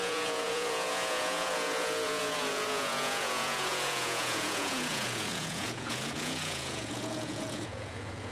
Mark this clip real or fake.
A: fake